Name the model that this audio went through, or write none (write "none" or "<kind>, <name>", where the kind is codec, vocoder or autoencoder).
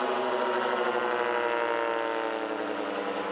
none